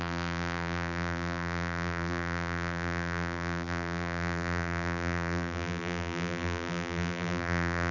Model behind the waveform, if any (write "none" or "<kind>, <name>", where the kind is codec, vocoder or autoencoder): vocoder, BigVGAN v2